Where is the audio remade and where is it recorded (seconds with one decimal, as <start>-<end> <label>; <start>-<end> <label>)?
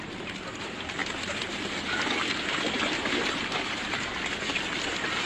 0.0-5.3 recorded